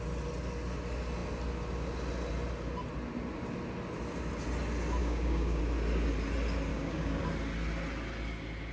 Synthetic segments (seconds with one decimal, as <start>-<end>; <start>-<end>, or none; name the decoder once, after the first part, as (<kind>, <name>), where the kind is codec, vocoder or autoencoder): 5.0-5.6 (codec, DAC); 6.7-7.2